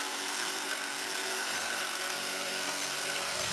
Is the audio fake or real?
fake